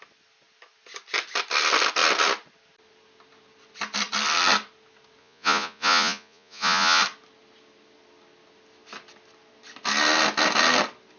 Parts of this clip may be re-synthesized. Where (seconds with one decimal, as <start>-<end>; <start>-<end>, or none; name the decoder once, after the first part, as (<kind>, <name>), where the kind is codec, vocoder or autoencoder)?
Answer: 5.2-7.0 (vocoder, Vocos)